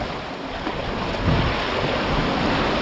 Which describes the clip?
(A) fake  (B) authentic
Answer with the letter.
B